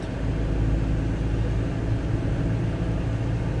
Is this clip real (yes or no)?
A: yes